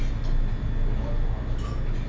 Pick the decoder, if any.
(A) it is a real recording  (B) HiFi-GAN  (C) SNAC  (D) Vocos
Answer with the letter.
A